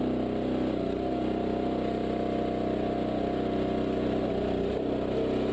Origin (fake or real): real